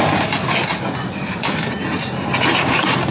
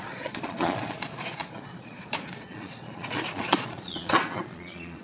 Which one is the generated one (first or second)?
second